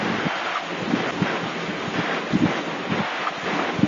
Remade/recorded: recorded